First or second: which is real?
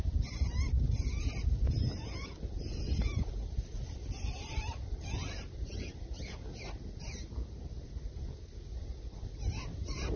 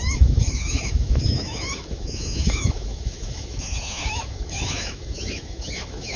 first